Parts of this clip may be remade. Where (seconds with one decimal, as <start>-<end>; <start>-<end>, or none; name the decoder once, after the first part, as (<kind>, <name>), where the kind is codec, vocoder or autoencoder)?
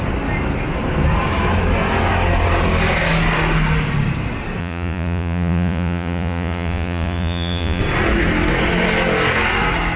4.6-7.8 (vocoder, Vocos)